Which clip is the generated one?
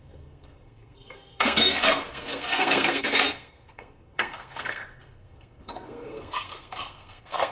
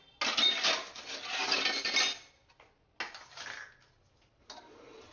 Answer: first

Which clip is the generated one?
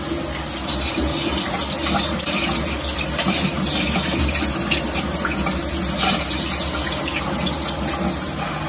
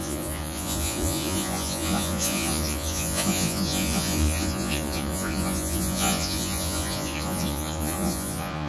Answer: second